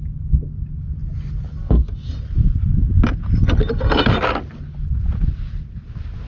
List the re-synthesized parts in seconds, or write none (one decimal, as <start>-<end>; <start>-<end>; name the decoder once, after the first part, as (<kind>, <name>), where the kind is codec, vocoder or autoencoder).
none